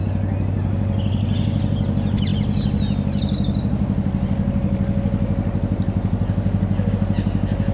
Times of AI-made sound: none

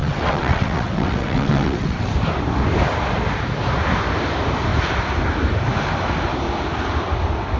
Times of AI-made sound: 0.0-2.1 (vocoder, WaveNeXt)